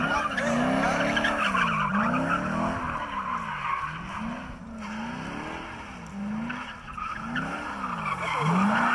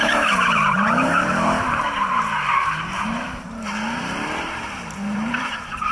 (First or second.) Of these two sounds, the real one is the first